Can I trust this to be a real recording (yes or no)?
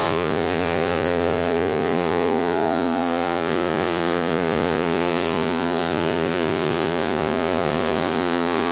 no